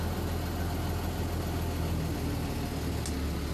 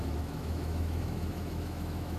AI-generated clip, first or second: second